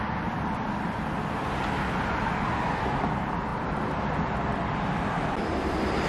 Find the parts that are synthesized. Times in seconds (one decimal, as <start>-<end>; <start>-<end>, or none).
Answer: none